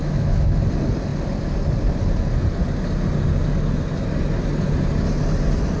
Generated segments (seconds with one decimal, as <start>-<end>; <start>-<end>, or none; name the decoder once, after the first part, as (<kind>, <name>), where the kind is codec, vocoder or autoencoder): 0.0-0.6 (autoencoder, DAC-VAE)